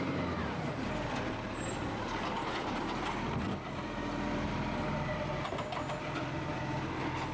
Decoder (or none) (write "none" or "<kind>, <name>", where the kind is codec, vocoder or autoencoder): none